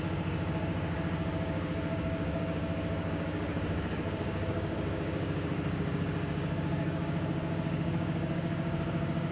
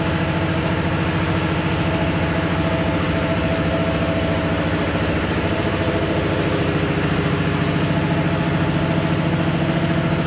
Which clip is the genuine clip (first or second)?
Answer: second